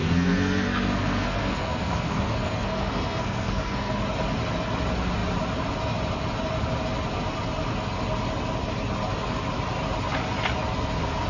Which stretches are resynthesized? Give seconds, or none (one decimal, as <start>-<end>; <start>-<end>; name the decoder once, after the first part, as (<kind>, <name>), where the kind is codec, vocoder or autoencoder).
0.0-4.0 (codec, SNAC)